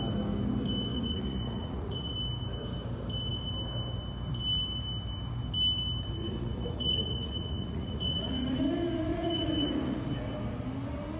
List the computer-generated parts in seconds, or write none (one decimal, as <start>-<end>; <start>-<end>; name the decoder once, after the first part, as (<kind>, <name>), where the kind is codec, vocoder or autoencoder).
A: 0.9-2.1 (vocoder, Vocos); 6.2-8.6; 9.1-10.0